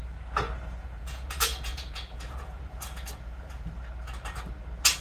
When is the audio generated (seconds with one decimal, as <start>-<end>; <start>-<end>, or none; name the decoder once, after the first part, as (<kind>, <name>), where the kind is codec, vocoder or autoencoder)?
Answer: 0.8-3.7 (vocoder, Vocos)